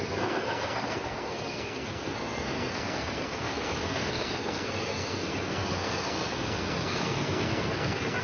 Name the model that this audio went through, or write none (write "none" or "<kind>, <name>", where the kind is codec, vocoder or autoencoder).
codec, SNAC